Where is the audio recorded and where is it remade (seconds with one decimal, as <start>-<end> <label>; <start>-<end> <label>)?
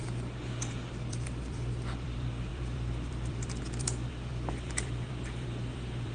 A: 0.0-1.1 recorded; 1.1-6.1 remade